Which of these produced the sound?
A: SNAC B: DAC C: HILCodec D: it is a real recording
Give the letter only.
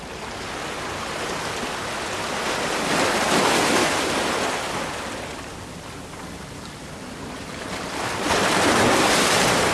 D